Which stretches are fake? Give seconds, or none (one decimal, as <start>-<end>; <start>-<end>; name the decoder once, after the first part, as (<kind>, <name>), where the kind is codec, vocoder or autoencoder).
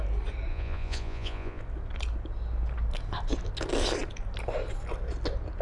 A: 0.5-1.6 (vocoder, Vocos)